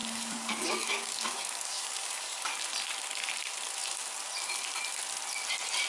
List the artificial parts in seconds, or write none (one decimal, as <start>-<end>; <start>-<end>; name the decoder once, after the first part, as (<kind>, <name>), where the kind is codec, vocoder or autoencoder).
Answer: 0.0-2.5 (codec, DAC)